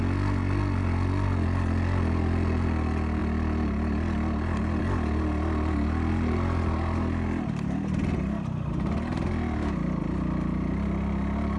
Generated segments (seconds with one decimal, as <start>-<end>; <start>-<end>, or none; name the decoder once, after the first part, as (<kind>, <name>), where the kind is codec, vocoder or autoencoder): none